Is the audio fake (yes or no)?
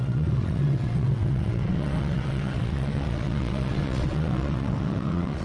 yes